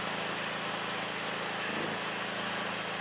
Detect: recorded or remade recorded